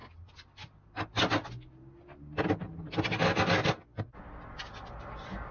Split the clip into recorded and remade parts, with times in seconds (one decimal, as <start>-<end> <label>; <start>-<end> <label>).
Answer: 0.0-5.5 recorded